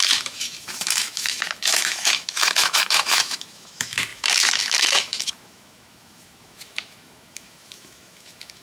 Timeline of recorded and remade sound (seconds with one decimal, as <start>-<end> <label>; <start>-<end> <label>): 0.0-8.6 remade